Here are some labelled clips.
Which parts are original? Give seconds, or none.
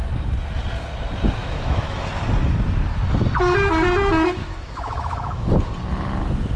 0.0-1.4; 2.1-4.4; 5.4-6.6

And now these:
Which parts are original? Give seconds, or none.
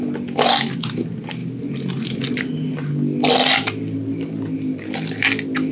0.0-5.7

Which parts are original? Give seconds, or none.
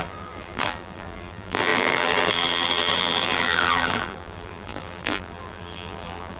none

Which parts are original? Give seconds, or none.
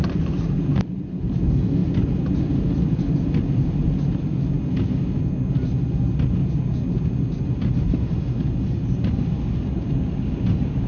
0.0-10.9